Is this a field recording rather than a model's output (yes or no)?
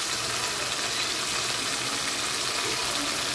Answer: yes